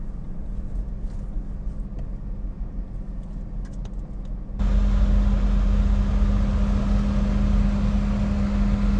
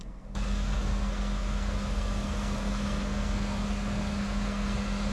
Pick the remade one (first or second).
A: second